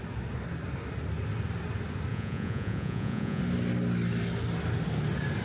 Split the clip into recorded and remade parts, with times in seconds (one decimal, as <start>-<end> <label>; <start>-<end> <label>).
0.0-2.1 recorded; 2.1-3.4 remade; 3.4-5.4 recorded